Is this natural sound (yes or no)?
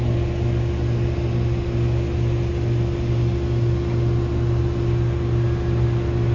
yes